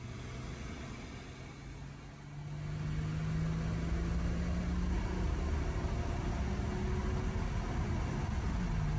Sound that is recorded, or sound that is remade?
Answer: recorded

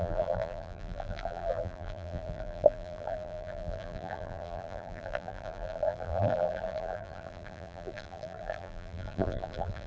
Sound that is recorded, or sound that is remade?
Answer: remade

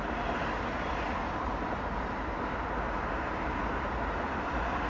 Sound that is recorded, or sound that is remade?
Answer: recorded